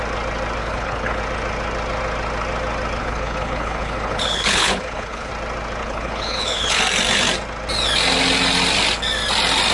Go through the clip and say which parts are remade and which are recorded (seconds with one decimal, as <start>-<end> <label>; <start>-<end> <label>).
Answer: 0.0-0.6 recorded; 0.6-1.2 remade; 1.2-3.0 recorded; 3.0-5.3 remade; 5.3-5.8 recorded; 5.8-6.8 remade; 6.8-9.7 recorded

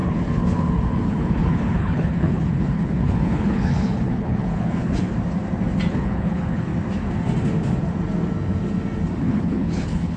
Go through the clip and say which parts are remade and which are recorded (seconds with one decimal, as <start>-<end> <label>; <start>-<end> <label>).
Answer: 0.0-5.1 remade; 5.1-5.9 recorded; 5.9-6.7 remade; 6.7-9.2 recorded; 9.2-10.2 remade